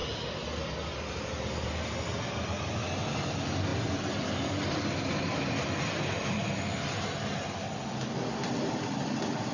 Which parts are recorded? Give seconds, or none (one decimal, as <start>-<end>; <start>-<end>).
0.0-9.5